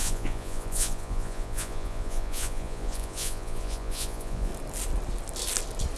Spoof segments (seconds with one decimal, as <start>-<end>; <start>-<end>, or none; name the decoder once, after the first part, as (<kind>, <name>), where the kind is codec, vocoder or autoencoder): 0.0-4.5 (vocoder, Vocos)